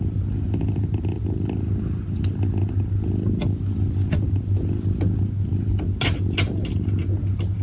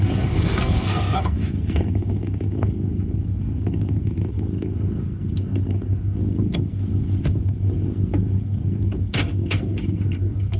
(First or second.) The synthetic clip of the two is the second